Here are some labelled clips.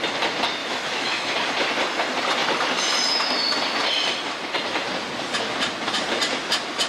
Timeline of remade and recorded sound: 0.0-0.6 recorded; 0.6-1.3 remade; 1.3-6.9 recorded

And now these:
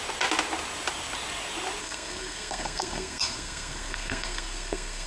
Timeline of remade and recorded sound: 0.0-1.8 recorded; 1.8-5.1 remade

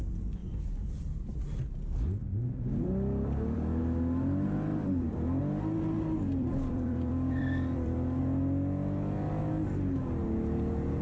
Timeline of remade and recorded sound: 0.0-0.4 recorded; 0.4-0.9 remade; 0.9-2.2 recorded; 2.2-3.8 remade; 3.8-4.7 recorded; 4.7-5.4 remade; 5.4-6.3 recorded; 6.3-8.2 remade; 8.2-11.0 recorded